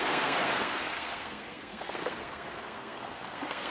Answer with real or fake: fake